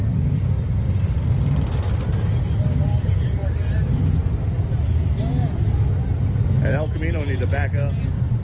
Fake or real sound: real